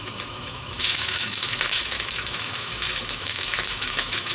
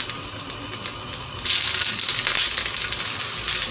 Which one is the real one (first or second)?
second